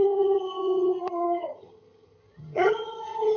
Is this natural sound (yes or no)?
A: no